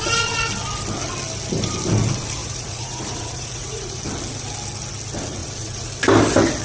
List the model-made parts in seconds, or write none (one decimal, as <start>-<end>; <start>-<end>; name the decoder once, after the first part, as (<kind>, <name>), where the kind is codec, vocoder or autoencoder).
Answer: 2.4-4.0 (vocoder, Vocos); 5.4-6.0